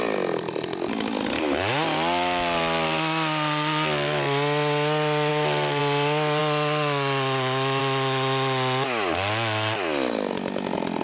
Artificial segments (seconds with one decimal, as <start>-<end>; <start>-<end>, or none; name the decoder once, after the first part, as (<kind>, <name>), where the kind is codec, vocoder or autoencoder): 5.3-5.8 (autoencoder, DAC-VAE)